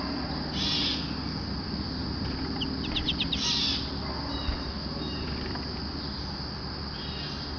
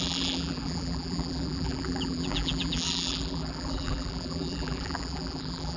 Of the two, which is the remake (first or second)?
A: second